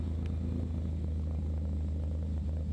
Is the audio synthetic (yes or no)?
no